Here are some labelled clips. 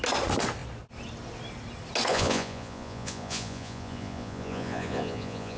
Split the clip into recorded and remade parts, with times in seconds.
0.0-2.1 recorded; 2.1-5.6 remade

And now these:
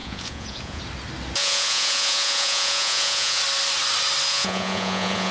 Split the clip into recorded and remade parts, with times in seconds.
0.0-0.8 remade; 0.8-1.4 recorded; 1.4-3.4 remade; 3.4-4.3 recorded; 4.3-5.3 remade

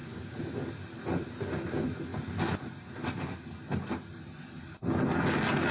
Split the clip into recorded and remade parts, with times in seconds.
0.0-0.5 remade; 0.5-5.7 recorded

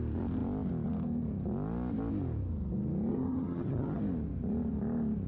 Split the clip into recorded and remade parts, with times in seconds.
0.0-3.1 recorded; 3.1-4.0 remade; 4.0-5.3 recorded

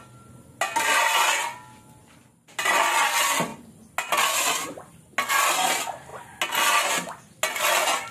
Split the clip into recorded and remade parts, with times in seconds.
0.0-8.1 recorded

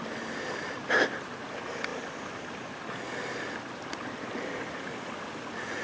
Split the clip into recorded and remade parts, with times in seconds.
0.0-5.8 recorded

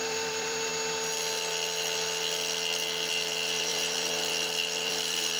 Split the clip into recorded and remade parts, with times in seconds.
0.0-0.7 remade; 0.7-3.1 recorded; 3.1-5.4 remade

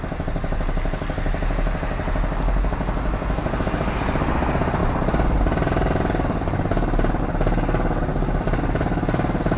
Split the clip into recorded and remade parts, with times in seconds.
0.0-4.8 recorded; 4.8-7.2 remade; 7.2-8.1 recorded; 8.1-8.6 remade; 8.6-9.6 recorded